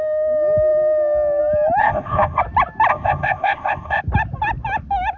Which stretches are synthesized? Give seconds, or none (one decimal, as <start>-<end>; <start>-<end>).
1.8-2.4; 2.9-4.0